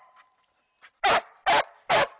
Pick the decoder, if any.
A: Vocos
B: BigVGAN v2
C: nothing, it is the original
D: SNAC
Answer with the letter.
C